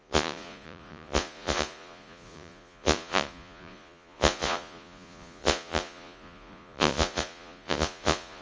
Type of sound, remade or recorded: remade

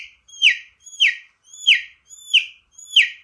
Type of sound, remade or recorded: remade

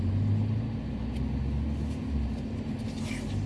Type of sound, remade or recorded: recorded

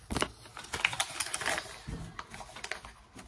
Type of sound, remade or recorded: recorded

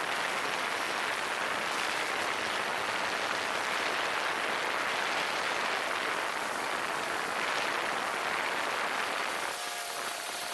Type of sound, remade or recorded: recorded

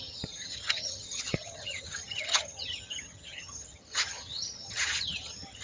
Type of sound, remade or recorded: remade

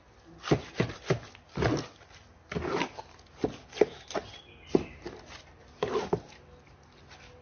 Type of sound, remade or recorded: recorded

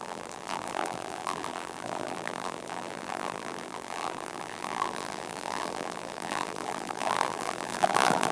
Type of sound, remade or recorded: remade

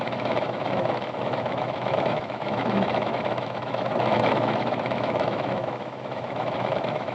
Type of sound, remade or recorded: remade